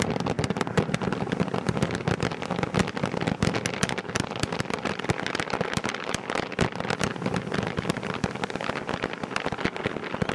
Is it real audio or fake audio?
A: real